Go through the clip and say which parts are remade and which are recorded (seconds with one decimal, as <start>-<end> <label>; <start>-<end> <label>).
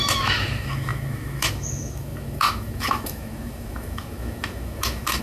0.0-5.2 remade